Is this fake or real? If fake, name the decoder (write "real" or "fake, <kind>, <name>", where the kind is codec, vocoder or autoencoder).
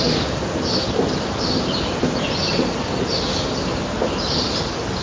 real